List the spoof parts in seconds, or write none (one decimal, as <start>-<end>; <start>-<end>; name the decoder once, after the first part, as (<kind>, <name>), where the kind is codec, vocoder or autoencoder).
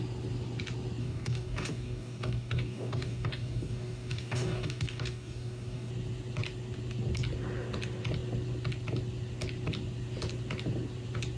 1.0-5.9 (codec, DAC)